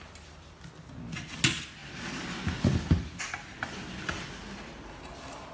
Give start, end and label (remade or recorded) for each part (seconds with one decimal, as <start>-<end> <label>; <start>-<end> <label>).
0.0-5.5 recorded

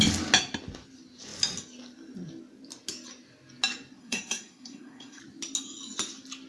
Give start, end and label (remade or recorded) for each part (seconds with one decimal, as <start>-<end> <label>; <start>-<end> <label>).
0.0-4.0 recorded; 4.0-5.2 remade; 5.2-6.5 recorded

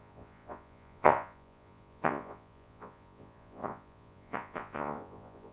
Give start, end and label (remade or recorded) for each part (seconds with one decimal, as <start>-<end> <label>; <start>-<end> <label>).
0.0-5.5 remade

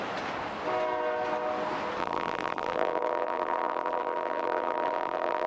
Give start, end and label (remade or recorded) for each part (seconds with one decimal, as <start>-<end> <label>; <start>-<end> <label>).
0.0-2.0 recorded; 2.0-5.5 remade